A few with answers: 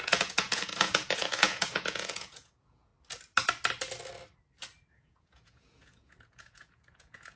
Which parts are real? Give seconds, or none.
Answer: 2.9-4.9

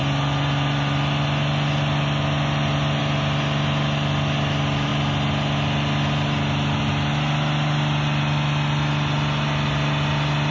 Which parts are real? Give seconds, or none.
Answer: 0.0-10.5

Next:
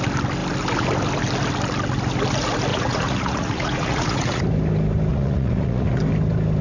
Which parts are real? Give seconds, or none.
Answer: 0.0-2.7; 4.4-5.1; 6.0-6.6

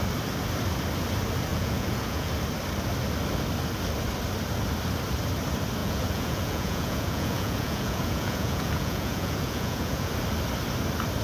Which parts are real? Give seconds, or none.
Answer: 0.0-1.5; 2.3-5.8; 10.1-11.2

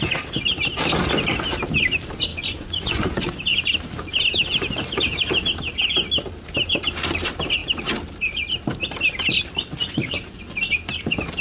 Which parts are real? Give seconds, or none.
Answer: 0.0-2.3; 3.2-9.8; 10.3-11.4

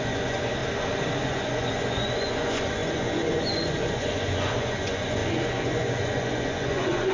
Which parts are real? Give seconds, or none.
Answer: 0.6-1.2

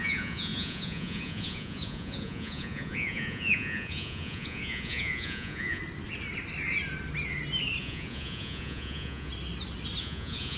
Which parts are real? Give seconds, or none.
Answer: 5.8-7.8; 9.3-10.0

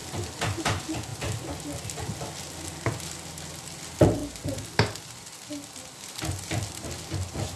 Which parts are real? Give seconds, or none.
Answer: 0.0-7.6